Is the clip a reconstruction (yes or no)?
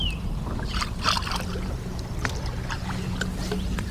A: no